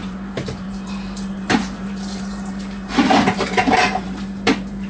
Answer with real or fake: fake